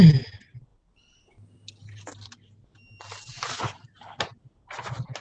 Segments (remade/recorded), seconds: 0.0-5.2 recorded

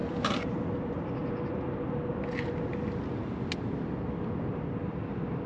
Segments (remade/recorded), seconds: 0.0-0.5 remade; 0.5-5.5 recorded

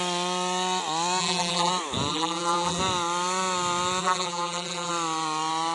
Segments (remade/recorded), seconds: 0.0-1.2 recorded; 1.2-1.7 remade; 1.7-2.1 recorded; 2.1-2.8 remade; 2.8-4.0 recorded; 4.0-4.9 remade; 4.9-5.7 recorded

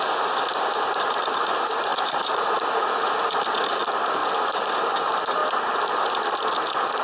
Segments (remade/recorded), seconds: 0.0-1.9 recorded; 1.9-3.2 remade; 3.2-7.0 recorded